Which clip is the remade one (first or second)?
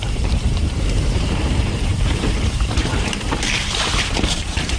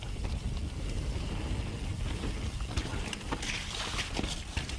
first